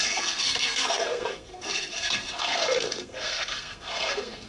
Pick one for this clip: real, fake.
fake